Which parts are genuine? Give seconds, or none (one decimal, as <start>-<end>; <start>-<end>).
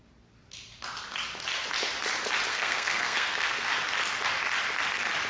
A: 0.0-2.5; 3.7-5.3